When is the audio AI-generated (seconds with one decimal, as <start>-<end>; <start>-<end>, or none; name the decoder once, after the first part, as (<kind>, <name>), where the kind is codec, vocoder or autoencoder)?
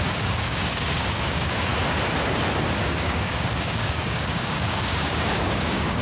0.0-1.7 (codec, DAC); 2.8-6.0